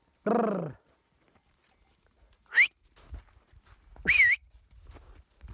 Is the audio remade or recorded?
recorded